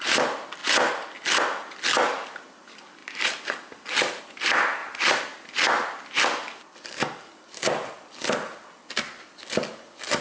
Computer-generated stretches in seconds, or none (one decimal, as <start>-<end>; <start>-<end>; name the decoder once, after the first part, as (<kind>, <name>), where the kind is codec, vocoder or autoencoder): none

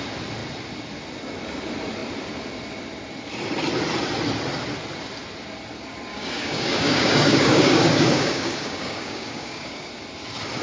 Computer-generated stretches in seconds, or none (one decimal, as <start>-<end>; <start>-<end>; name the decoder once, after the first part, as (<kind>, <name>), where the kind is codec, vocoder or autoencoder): 6.1-9.9 (codec, DAC)

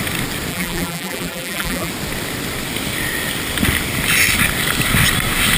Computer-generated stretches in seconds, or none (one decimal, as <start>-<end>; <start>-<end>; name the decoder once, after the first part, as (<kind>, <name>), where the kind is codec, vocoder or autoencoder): 0.5-1.9 (vocoder, BigVGAN v2)

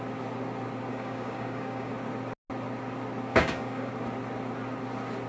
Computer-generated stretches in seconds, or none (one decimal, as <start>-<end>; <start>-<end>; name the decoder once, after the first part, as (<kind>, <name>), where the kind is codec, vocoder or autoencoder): 0.9-1.9 (codec, DAC); 3.3-3.9

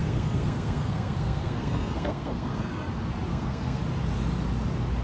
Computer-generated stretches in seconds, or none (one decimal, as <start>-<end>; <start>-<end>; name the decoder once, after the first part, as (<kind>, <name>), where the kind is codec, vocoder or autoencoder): 0.0-2.9 (codec, SNAC); 3.3-3.8

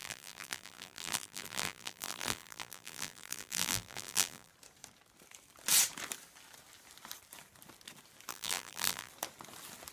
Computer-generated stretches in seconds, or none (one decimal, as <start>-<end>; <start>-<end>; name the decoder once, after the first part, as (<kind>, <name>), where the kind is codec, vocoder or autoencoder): 0.0-4.5 (vocoder, BigVGAN v2); 8.3-9.1